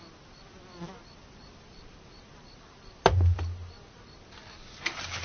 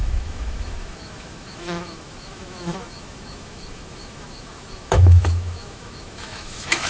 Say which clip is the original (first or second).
first